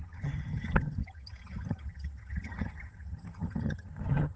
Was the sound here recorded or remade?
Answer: remade